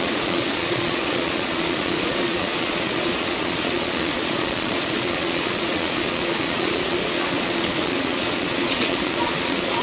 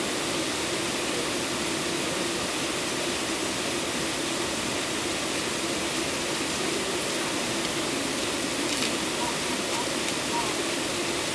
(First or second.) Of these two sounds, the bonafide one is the second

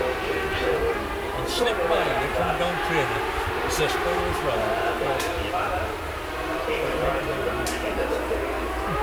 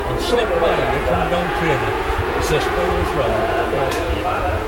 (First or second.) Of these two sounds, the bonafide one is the first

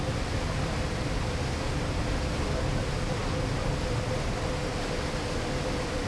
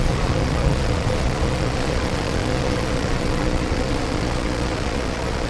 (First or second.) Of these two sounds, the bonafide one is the first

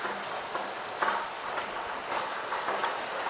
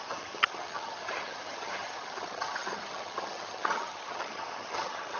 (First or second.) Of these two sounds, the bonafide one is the first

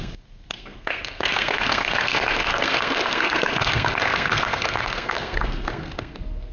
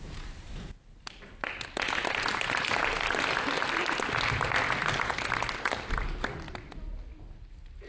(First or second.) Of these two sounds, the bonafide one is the second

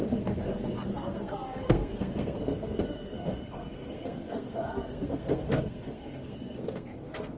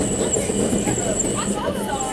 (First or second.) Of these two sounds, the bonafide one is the second